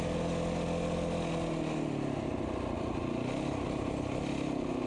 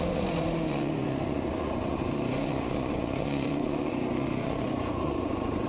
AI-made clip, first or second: second